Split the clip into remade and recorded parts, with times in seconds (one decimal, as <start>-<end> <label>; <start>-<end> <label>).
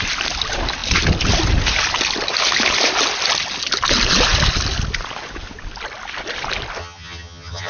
0.0-6.8 recorded; 6.8-7.7 remade